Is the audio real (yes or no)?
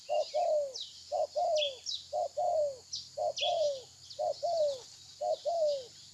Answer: yes